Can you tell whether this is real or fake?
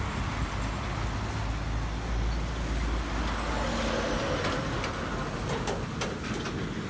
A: real